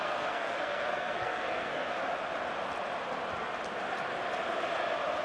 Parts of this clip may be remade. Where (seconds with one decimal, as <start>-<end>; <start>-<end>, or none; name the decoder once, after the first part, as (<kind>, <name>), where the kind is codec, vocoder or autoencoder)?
0.0-2.0 (codec, SNAC)